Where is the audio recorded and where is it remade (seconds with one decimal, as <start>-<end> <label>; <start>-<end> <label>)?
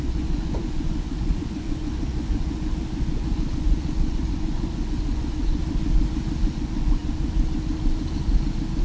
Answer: 0.0-5.6 remade; 5.6-6.5 recorded; 6.5-7.0 remade; 7.0-8.8 recorded